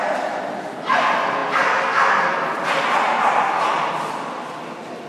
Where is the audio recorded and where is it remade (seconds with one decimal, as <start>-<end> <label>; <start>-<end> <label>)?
0.0-5.1 recorded